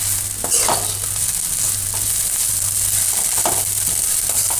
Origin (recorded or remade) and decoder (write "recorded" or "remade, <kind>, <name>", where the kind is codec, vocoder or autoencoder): recorded